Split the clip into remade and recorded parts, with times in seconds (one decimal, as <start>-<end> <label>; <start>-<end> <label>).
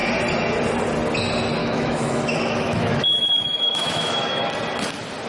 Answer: 0.0-1.6 recorded; 1.6-4.5 remade; 4.5-5.3 recorded